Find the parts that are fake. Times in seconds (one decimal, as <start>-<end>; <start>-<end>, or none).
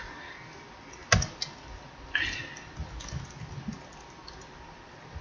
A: none